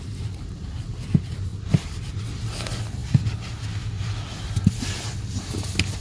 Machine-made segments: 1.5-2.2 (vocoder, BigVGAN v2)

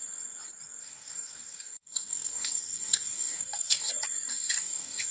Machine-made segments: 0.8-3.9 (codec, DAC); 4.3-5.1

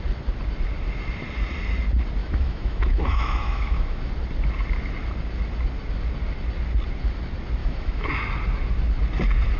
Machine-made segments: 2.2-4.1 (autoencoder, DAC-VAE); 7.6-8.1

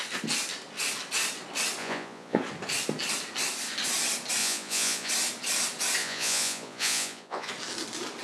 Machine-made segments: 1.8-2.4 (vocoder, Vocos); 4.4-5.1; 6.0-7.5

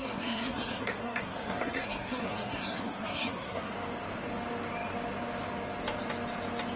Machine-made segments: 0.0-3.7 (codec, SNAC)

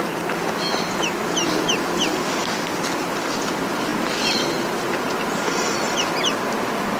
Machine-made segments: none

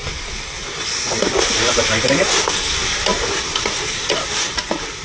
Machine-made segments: 1.8-5.0 (vocoder, BigVGAN v2)

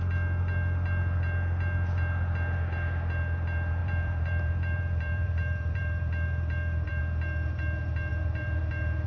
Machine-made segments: 3.8-7.0 (vocoder, BigVGAN v2); 8.1-8.6